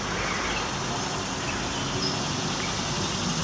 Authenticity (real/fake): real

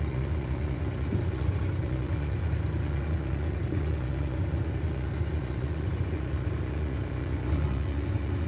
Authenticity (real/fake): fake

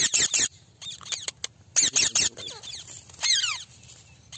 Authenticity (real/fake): real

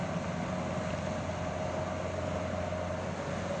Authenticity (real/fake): real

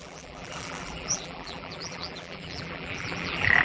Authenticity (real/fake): fake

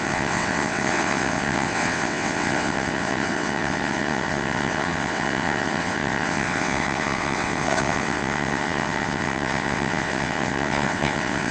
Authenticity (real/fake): fake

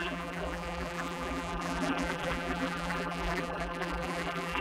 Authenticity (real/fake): fake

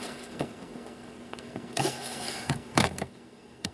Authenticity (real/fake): fake